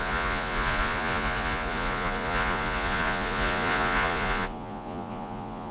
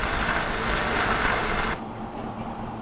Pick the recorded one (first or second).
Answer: second